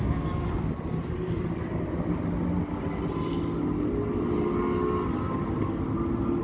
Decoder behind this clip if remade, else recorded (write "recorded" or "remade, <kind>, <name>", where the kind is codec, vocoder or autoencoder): recorded